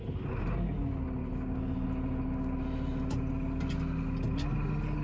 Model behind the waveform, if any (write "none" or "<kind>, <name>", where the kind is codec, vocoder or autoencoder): none